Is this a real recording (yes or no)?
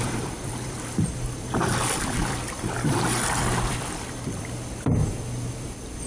no